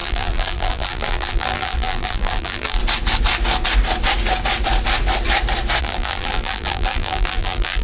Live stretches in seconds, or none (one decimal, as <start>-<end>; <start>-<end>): 2.8-5.8